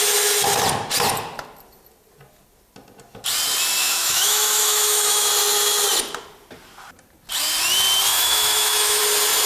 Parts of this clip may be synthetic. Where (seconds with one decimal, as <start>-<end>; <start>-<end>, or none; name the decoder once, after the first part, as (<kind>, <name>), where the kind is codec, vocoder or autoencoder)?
3.8-5.3 (autoencoder, DAC-VAE); 8.1-9.0